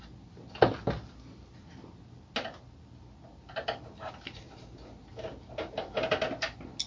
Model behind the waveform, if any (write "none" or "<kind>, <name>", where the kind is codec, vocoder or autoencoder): none